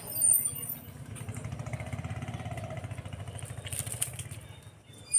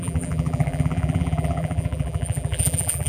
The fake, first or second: second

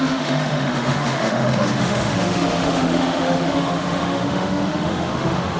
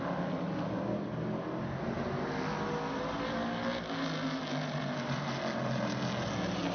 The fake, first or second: first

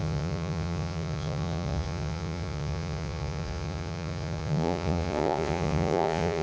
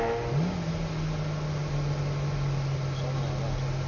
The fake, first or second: first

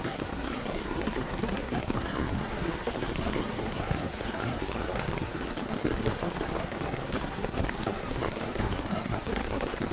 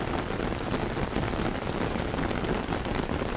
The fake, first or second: first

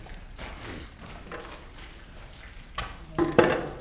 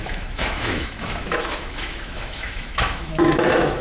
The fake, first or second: second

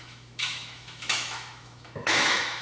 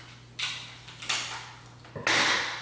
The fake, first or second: first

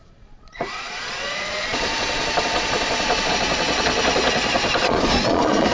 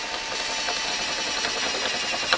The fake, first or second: first